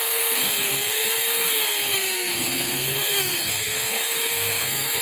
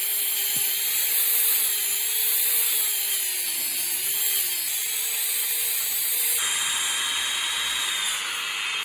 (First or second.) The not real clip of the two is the first